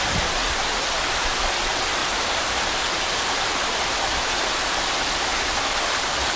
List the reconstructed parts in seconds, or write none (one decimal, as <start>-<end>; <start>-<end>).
2.0-3.5